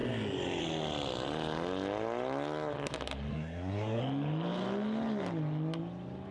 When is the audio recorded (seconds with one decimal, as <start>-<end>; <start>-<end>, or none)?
0.0-3.3; 4.0-6.3